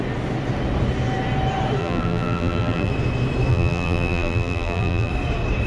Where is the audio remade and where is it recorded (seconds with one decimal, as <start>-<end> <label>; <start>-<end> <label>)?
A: 0.0-1.8 recorded; 1.8-2.9 remade; 2.9-3.5 recorded; 3.5-5.1 remade; 5.1-5.7 recorded